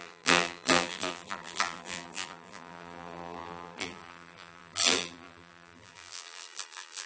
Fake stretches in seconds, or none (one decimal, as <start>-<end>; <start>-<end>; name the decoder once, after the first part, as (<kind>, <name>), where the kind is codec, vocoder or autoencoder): 0.0-7.1 (vocoder, BigVGAN v2)